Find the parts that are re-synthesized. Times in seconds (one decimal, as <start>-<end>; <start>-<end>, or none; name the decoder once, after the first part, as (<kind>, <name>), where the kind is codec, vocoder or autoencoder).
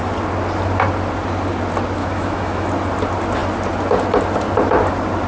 2.0-2.7 (autoencoder, DAC-VAE)